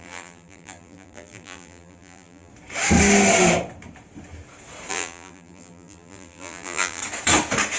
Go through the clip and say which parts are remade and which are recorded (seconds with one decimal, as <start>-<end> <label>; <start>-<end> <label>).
0.0-2.5 remade; 2.5-4.9 recorded; 4.9-7.0 remade; 7.0-7.8 recorded